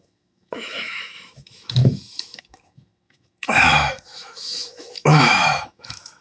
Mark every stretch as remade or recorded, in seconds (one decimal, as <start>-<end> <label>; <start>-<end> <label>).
0.0-6.2 remade